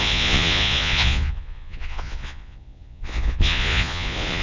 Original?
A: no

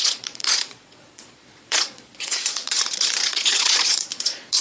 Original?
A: no